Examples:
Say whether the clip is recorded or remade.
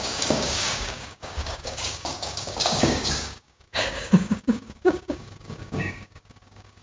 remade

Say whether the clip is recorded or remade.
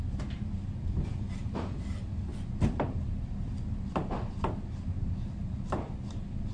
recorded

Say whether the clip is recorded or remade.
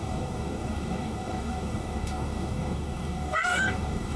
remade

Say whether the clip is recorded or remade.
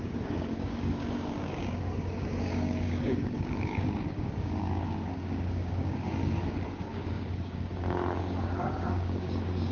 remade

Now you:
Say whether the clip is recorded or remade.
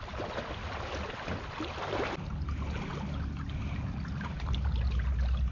recorded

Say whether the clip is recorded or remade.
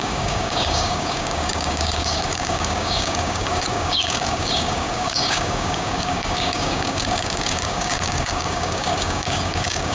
remade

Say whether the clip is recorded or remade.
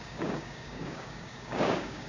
remade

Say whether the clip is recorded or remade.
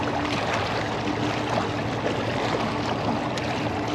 recorded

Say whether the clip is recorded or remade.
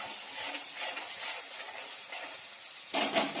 recorded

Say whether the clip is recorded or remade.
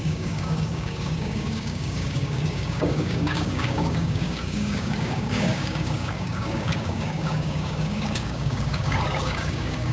remade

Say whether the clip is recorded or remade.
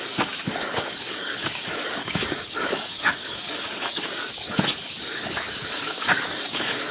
remade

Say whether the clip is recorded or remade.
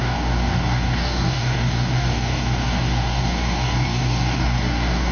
remade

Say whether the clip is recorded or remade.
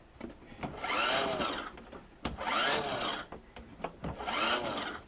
recorded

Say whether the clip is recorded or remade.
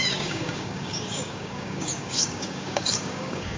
remade